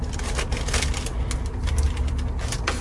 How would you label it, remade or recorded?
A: recorded